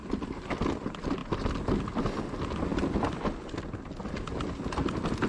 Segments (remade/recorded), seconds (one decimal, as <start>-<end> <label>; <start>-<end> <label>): 0.0-5.3 recorded